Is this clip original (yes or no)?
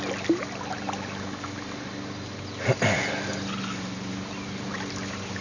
yes